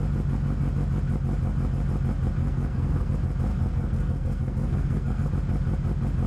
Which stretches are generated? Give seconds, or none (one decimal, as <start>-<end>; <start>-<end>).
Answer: 2.4-3.1; 3.5-5.3